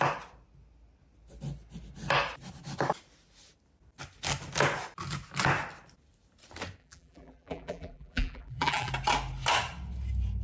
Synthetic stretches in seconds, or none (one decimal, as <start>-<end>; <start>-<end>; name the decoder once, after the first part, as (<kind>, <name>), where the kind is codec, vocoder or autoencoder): 6.8-8.9 (vocoder, BigVGAN v2)